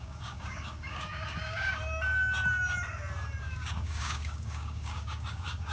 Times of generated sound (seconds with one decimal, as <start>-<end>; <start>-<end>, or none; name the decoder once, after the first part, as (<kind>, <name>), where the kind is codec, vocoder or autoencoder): 0.0-1.8 (codec, DAC); 3.4-5.7